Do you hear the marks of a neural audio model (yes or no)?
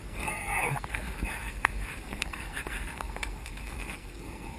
yes